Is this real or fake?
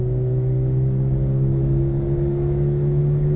fake